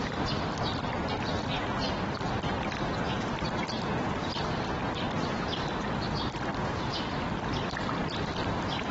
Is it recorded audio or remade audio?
remade